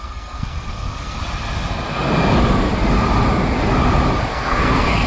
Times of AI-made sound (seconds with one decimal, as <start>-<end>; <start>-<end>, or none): 0.0-1.2; 4.3-5.1